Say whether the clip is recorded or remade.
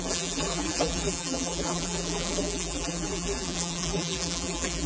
remade